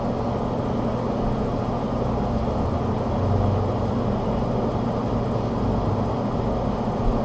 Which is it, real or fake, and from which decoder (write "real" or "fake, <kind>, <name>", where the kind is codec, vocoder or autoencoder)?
real